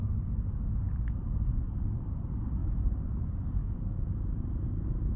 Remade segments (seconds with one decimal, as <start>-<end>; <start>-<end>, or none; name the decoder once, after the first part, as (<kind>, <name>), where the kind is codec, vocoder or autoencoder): 3.6-4.1 (autoencoder, DAC-VAE)